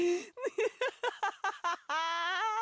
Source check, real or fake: real